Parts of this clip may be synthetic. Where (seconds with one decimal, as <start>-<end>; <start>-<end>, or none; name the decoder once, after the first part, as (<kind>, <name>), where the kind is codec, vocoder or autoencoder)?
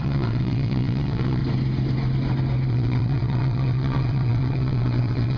0.0-1.4 (vocoder, WaveNeXt); 2.7-5.4